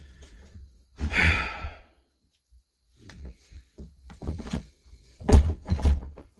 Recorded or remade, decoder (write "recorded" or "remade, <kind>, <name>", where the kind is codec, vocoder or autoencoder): remade, vocoder, Vocos